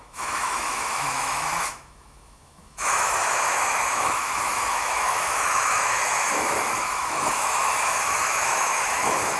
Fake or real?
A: fake